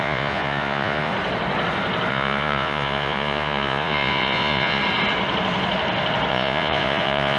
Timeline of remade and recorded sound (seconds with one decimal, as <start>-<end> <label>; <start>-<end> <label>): 0.0-1.1 remade; 1.1-2.1 recorded; 2.1-4.8 remade; 4.8-6.3 recorded; 6.3-7.4 remade